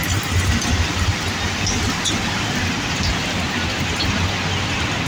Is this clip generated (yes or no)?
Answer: no